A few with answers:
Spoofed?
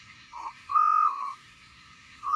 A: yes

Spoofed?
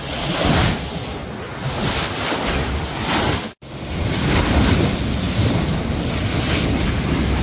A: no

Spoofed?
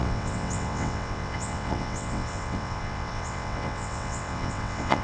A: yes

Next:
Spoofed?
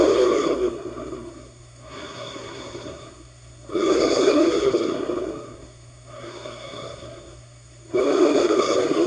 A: yes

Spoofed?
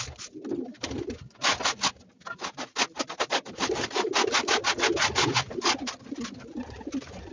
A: no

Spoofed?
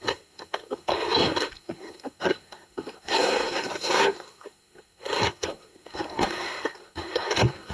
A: yes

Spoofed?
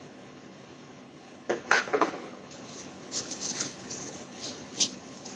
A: yes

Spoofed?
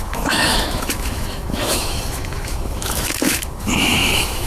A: yes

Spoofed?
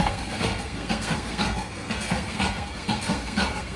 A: yes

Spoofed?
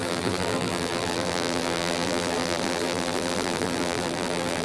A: yes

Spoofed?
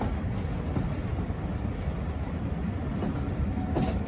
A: yes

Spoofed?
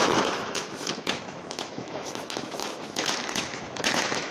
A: yes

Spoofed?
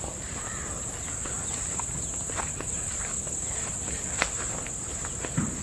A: no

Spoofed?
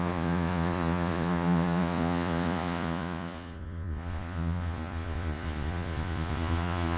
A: yes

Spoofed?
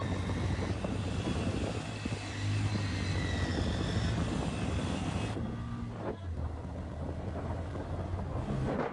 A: no